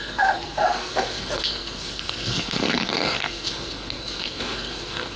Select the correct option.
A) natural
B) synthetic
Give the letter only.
B